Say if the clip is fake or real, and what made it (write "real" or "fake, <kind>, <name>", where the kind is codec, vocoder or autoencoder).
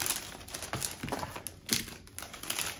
real